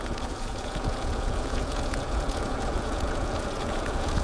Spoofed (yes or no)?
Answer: yes